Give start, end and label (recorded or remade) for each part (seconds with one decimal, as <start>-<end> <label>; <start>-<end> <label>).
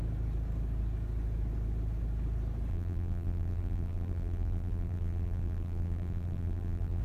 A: 0.0-2.7 recorded; 2.7-7.0 remade